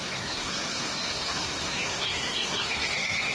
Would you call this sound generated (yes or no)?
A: yes